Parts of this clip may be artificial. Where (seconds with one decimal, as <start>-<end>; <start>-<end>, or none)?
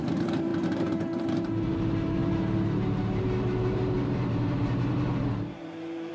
0.0-6.1